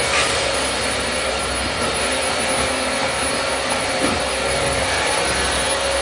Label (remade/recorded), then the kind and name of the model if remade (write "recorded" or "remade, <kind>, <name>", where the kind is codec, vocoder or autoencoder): recorded